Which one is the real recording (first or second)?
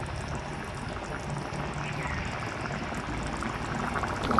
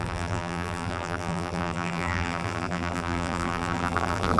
first